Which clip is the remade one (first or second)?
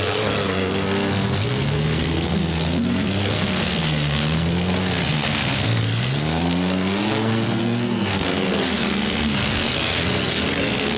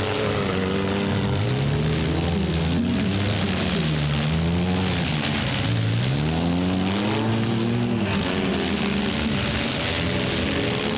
first